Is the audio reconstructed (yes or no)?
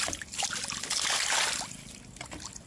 no